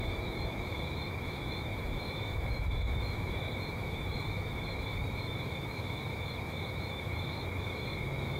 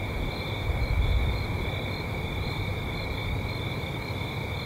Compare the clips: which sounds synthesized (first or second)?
first